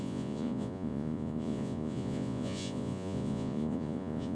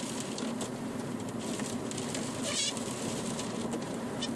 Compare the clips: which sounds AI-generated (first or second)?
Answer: first